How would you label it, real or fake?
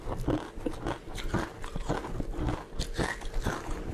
real